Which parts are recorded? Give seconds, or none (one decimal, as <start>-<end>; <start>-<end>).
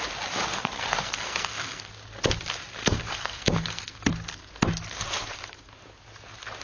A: 0.0-0.5; 1.9-2.8; 4.1-6.6